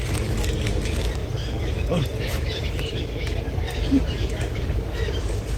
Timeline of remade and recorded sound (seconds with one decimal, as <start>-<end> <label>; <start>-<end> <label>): 0.0-5.6 remade